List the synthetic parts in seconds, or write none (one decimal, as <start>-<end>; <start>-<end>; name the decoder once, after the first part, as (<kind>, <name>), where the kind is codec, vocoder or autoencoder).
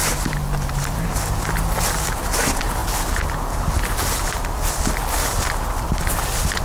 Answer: none